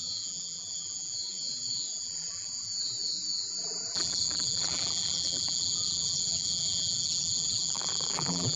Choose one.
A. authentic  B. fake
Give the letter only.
B